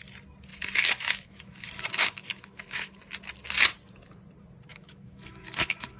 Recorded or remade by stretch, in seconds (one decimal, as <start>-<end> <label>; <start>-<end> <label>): 0.0-0.5 recorded; 0.5-3.0 remade; 3.0-4.7 recorded; 4.7-6.0 remade